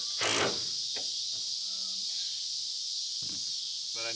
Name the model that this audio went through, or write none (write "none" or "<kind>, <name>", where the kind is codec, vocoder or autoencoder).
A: none